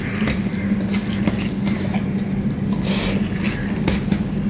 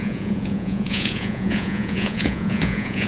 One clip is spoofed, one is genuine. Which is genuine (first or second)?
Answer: first